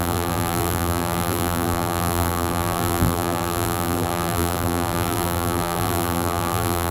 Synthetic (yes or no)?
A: yes